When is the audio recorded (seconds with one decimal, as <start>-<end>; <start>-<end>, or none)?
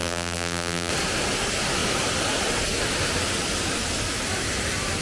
0.9-5.0